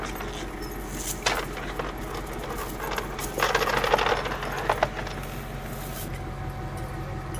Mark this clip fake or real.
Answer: real